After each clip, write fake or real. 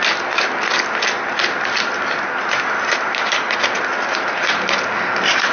real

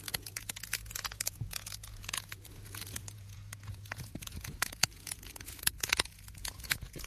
fake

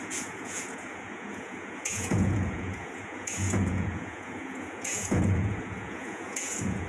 fake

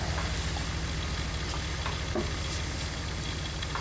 real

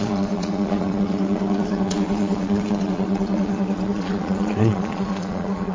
fake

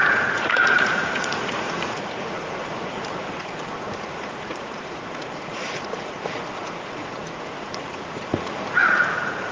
fake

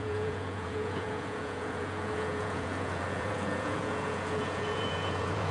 fake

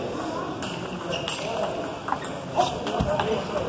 real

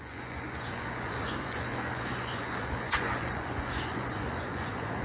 fake